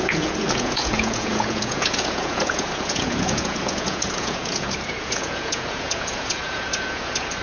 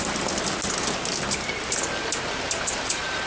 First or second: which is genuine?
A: second